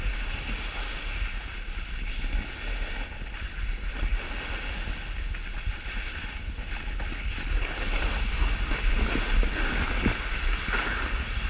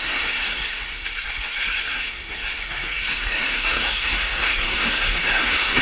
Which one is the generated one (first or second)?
second